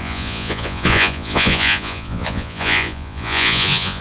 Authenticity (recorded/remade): remade